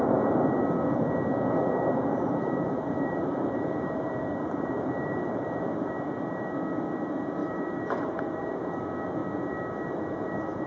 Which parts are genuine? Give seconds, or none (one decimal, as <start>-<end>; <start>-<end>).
0.0-2.1; 5.9-7.4; 8.7-10.7